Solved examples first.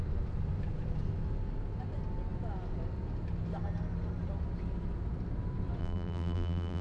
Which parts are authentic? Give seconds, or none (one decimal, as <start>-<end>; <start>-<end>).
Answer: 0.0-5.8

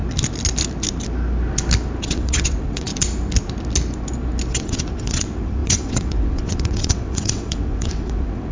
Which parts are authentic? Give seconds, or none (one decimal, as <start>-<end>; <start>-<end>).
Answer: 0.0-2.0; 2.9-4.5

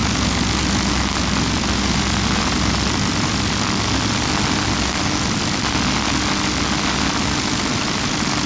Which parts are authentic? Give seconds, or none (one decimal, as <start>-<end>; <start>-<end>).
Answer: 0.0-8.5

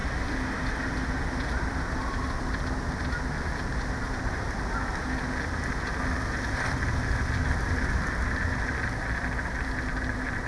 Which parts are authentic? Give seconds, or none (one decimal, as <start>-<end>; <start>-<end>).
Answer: 0.0-10.5

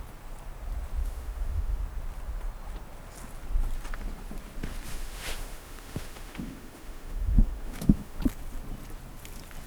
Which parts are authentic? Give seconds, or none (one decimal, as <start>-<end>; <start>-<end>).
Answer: 0.0-1.0; 1.8-4.9; 8.2-9.7

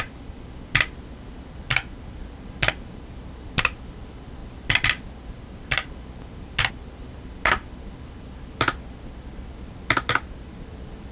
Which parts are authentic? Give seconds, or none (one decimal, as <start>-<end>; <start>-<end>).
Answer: 0.0-11.1

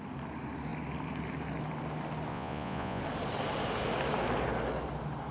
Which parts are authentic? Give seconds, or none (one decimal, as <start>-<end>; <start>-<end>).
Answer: 0.0-2.3; 3.0-5.3